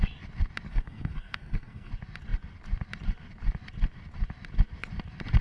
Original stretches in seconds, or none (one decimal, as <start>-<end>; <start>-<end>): 0.0-0.7; 1.9-5.4